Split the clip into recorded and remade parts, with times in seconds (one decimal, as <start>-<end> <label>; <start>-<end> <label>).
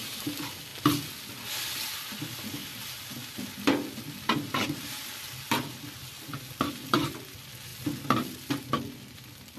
0.0-9.6 recorded